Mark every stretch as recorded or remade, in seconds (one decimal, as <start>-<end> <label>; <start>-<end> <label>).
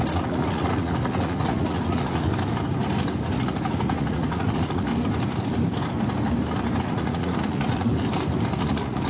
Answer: 0.0-2.3 remade; 2.3-3.4 recorded; 3.4-4.9 remade; 4.9-6.8 recorded; 6.8-7.9 remade; 7.9-8.6 recorded; 8.6-9.1 remade